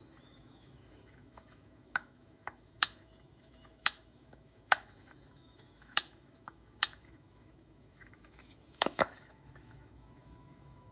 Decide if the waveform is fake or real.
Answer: fake